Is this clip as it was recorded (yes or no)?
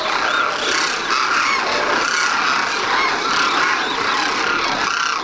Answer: yes